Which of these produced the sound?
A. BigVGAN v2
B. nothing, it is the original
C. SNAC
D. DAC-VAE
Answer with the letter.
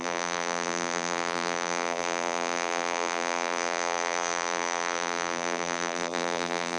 A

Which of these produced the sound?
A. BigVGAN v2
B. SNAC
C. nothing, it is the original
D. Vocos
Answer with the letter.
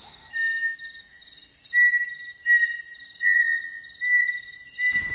C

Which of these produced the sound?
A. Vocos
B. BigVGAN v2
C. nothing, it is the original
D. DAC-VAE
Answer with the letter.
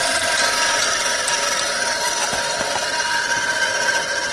B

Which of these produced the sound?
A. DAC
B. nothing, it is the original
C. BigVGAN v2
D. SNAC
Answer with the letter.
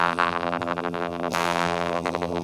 C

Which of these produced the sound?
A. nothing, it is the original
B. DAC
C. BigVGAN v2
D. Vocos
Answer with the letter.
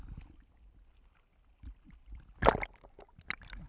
A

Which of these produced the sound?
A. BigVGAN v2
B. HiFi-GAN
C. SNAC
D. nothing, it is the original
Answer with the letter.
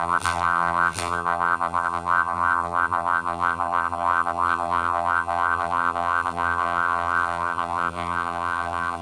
A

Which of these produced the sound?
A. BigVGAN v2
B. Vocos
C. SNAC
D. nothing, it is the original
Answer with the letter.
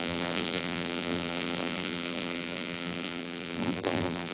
A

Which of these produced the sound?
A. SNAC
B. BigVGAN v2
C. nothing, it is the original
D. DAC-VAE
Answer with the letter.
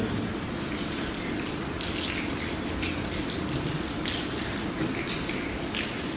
C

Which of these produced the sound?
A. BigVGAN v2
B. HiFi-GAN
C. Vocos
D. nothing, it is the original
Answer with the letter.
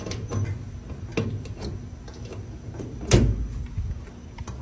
D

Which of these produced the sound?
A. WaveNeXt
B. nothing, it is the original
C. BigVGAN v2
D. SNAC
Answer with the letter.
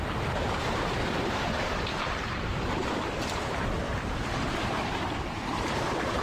C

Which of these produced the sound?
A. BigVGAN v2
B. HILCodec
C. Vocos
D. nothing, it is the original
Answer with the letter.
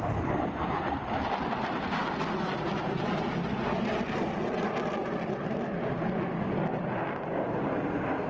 D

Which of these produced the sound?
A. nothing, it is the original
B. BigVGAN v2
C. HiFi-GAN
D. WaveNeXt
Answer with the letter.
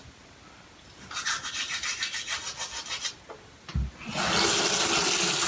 A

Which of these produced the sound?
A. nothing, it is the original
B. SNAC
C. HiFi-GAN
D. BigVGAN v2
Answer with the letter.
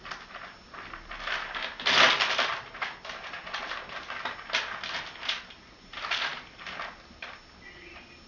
A